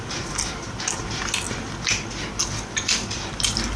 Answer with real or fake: real